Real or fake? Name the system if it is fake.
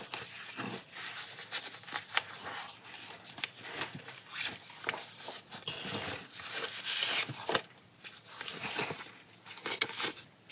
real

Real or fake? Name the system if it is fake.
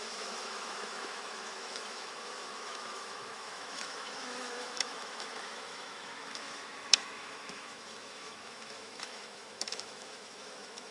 fake, autoencoder, DAC-VAE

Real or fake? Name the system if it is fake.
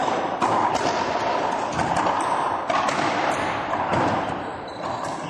fake, vocoder, BigVGAN v2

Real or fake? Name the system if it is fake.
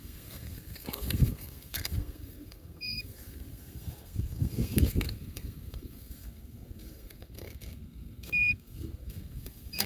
fake, codec, SNAC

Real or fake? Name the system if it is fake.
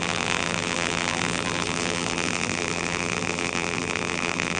fake, vocoder, BigVGAN v2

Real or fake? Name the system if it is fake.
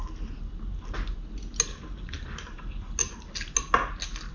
real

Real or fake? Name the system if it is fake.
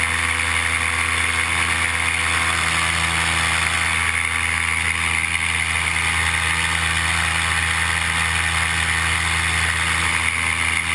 real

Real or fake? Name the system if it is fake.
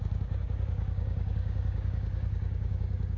fake, codec, DAC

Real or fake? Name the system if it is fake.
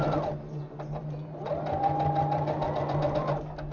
real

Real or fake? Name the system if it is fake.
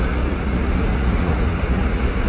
fake, vocoder, Vocos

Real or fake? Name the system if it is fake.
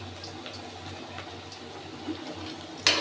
real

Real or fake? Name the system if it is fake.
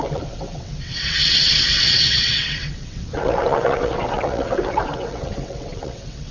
fake, vocoder, WaveNeXt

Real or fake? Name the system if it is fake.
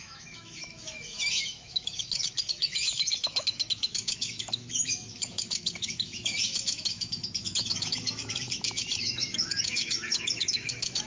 fake, autoencoder, DAC-VAE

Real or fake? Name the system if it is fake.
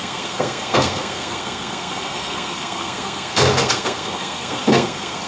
fake, codec, SNAC